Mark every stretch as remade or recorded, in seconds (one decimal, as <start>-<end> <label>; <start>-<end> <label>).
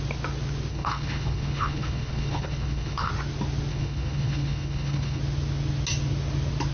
0.0-0.7 recorded; 0.7-3.1 remade; 3.1-3.7 recorded; 3.7-5.2 remade; 5.2-6.7 recorded